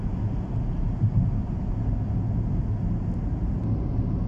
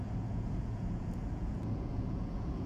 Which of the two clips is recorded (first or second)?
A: first